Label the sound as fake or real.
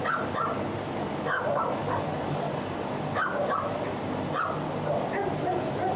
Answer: real